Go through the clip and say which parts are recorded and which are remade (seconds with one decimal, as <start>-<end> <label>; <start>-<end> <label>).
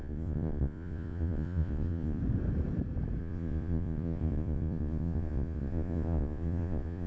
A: 0.0-2.2 remade; 2.2-3.2 recorded; 3.2-7.1 remade